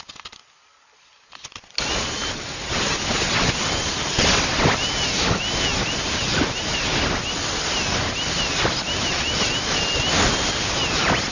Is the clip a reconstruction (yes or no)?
no